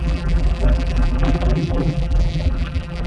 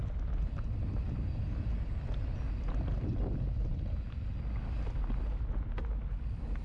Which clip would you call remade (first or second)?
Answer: first